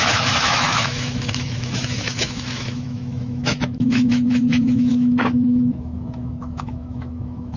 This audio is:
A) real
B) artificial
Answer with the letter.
B